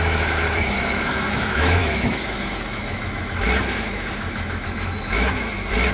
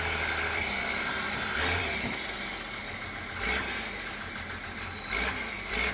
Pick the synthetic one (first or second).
first